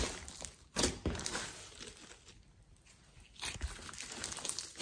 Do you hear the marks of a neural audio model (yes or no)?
no